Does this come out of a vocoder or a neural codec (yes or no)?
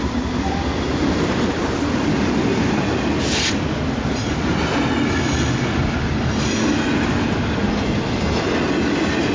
no